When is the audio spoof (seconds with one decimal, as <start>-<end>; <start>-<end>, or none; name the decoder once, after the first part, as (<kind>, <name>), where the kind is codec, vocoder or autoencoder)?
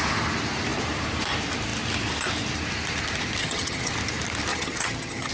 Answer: 3.4-3.9 (vocoder, HiFi-GAN); 4.5-5.3